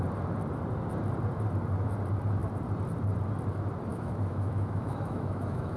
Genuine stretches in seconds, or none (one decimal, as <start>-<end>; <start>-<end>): 0.0-3.9